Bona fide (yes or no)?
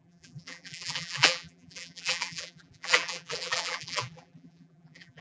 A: no